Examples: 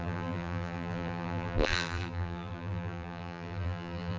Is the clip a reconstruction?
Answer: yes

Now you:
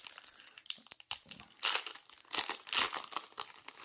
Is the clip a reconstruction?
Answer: no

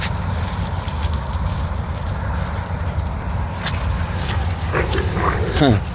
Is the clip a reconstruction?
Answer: yes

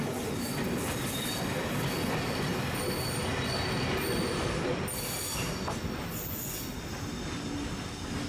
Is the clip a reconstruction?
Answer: no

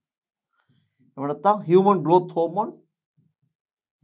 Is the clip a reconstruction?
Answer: no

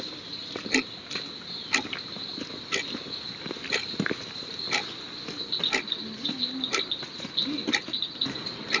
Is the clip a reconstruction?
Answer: no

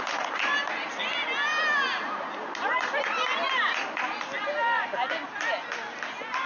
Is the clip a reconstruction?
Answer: no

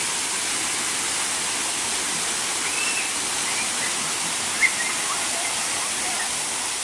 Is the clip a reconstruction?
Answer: no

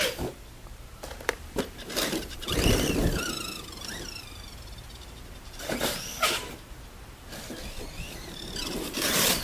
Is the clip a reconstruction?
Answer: yes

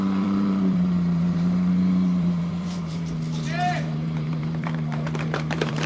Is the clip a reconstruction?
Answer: yes